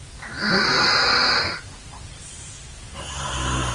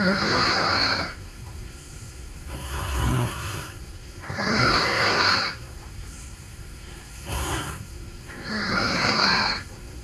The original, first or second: first